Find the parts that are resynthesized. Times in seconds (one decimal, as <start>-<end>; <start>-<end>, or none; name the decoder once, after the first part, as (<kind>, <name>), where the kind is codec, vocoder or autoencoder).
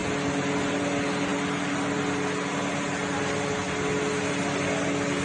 none